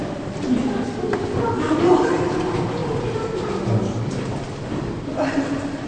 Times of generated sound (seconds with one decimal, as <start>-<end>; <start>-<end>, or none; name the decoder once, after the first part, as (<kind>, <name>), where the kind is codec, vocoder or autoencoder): 2.8-3.4 (vocoder, BigVGAN v2)